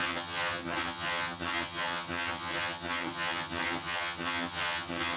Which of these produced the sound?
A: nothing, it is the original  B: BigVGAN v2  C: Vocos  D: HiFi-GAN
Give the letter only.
D